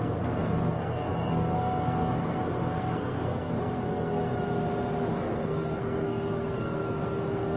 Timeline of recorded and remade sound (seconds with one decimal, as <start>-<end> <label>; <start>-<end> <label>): 0.0-4.3 remade; 4.3-5.1 recorded; 5.1-7.6 remade